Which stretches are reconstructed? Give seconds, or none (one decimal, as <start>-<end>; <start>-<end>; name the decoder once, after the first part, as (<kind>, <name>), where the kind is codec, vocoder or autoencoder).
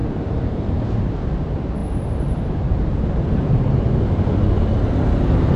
0.0-1.0 (vocoder, BigVGAN v2); 1.8-4.2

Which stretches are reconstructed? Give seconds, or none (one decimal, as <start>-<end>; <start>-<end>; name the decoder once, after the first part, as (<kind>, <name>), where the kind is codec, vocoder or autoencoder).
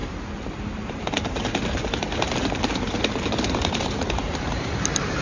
0.0-5.2 (vocoder, BigVGAN v2)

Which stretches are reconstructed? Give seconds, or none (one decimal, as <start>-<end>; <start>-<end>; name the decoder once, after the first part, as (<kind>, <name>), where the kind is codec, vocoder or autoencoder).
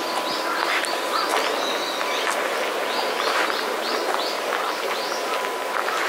none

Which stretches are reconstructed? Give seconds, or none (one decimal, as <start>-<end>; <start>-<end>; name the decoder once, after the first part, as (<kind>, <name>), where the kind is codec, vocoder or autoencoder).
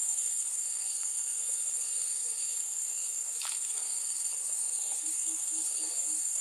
0.0-6.4 (codec, SNAC)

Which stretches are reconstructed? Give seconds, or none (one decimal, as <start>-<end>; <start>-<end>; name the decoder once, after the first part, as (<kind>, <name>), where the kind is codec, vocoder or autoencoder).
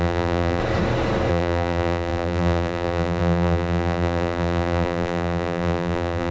0.0-0.6 (vocoder, BigVGAN v2); 1.3-6.3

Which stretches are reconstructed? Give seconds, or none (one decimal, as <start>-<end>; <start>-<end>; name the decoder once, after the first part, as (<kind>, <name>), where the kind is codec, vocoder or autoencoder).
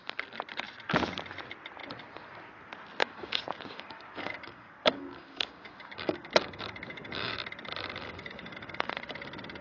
3.0-7.3 (codec, DAC); 8.0-8.9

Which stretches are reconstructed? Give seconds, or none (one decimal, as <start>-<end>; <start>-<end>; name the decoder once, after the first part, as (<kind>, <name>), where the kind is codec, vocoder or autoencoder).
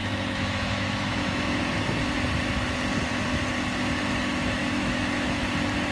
0.0-1.6 (autoencoder, DAC-VAE); 4.6-5.4